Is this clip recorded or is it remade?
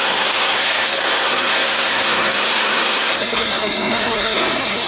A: remade